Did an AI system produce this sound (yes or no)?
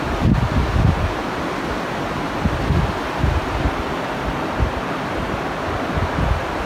no